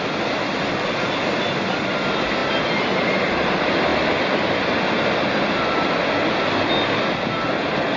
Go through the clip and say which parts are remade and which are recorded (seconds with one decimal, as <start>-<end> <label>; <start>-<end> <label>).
0.0-8.0 recorded